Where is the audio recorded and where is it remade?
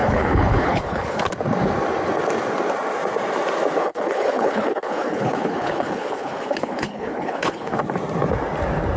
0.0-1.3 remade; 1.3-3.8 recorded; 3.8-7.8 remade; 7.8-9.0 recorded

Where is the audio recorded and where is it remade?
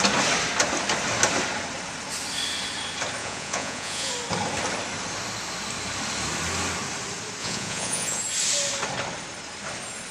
0.0-3.2 recorded; 3.2-4.1 remade; 4.1-7.4 recorded; 7.4-8.2 remade; 8.2-10.1 recorded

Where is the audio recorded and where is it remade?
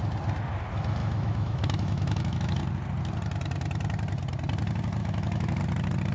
0.0-1.0 recorded; 1.0-2.6 remade; 2.6-5.0 recorded; 5.0-5.6 remade; 5.6-6.1 recorded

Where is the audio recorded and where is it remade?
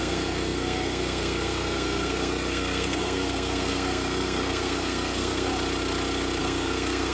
0.0-5.5 remade; 5.5-6.4 recorded; 6.4-7.1 remade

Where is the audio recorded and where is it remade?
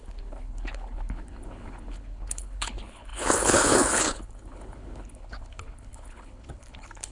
0.0-7.1 remade